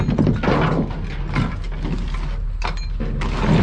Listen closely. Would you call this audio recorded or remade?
recorded